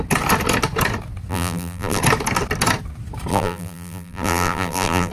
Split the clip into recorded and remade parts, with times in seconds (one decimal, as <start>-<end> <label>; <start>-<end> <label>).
0.0-1.3 recorded; 1.3-2.0 remade; 2.0-3.3 recorded; 3.3-5.1 remade

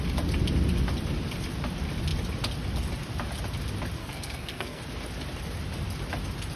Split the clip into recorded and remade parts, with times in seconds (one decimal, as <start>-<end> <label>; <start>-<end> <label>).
0.0-4.0 recorded; 4.0-4.8 remade; 4.8-6.6 recorded

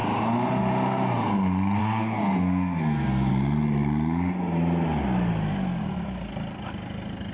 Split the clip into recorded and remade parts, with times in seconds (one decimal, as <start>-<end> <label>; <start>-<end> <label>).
0.0-1.8 recorded; 1.8-3.3 remade; 3.3-7.3 recorded